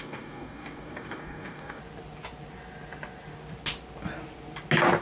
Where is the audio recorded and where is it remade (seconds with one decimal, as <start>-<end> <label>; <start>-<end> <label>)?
0.0-1.8 remade; 1.8-5.0 recorded